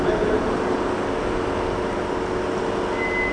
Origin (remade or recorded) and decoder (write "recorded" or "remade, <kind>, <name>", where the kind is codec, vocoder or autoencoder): recorded